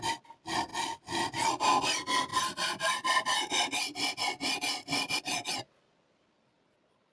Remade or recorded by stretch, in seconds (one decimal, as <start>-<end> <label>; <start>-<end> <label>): 0.0-7.1 recorded